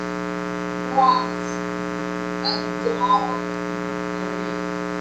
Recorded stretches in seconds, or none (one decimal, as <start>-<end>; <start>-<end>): 0.0-5.0